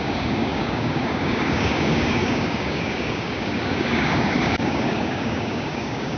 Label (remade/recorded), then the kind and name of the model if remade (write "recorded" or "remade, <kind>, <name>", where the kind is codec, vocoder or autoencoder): remade, codec, DAC